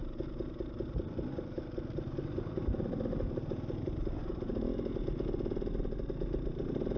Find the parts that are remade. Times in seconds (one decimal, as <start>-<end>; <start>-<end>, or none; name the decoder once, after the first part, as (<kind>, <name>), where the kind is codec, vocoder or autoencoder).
none